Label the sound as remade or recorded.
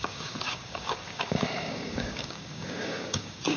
remade